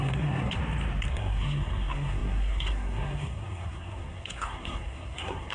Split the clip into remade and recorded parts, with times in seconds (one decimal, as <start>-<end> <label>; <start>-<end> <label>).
0.0-0.6 remade; 0.6-1.1 recorded; 1.1-5.5 remade